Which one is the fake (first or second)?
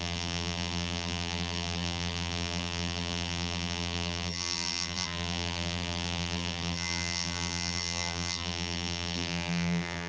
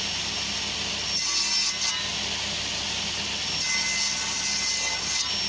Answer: first